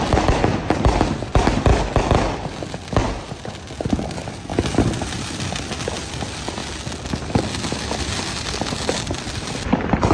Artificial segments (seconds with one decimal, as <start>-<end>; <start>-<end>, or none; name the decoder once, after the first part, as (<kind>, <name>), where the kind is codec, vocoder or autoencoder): 3.0-3.6 (vocoder, BigVGAN v2)